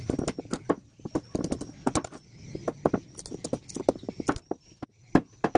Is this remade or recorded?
recorded